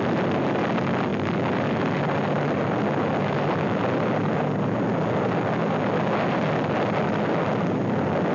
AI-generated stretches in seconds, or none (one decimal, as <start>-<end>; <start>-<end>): none